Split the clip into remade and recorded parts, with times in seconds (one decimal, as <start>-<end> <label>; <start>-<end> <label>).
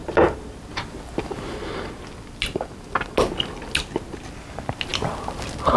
0.0-5.8 recorded